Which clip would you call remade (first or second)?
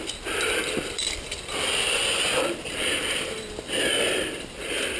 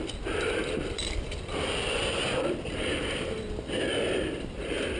second